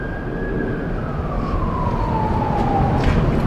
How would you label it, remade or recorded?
recorded